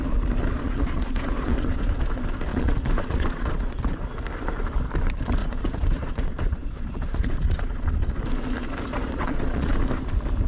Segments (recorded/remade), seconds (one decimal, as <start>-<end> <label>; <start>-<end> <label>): 0.0-0.5 recorded; 0.5-2.0 remade; 2.0-2.5 recorded; 2.5-4.0 remade; 4.0-5.4 recorded; 5.4-8.2 remade; 8.2-8.9 recorded; 8.9-9.8 remade; 9.8-10.5 recorded